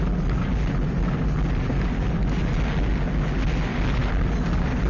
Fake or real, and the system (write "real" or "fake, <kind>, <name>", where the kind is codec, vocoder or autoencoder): real